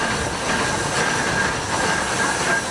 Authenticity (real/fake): real